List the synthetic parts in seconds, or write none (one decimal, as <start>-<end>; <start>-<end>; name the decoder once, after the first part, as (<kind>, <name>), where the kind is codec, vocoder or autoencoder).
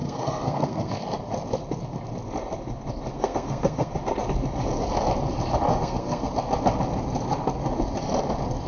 0.0-0.9 (codec, SNAC); 3.1-4.0; 5.7-6.3